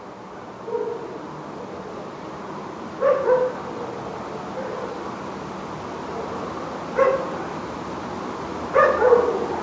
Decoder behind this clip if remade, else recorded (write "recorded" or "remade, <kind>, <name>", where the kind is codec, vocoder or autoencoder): recorded